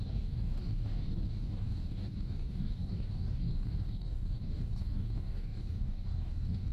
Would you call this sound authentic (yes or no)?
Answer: no